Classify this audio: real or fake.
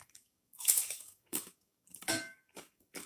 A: fake